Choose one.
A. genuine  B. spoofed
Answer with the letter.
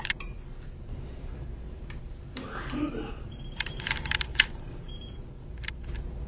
B